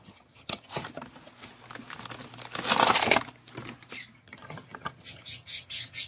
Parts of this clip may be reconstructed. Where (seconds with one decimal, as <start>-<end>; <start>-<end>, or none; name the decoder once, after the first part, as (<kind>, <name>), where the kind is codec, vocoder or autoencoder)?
0.0-0.8 (vocoder, HiFi-GAN); 4.2-6.1